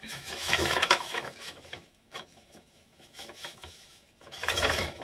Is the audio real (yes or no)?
no